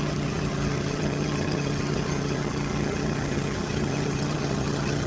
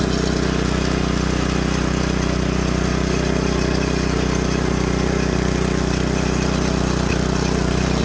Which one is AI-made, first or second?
first